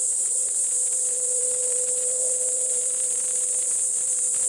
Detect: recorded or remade remade